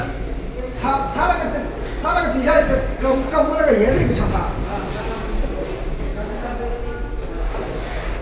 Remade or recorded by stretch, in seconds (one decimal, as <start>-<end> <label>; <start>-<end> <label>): 0.0-8.2 recorded